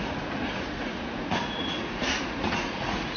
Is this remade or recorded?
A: remade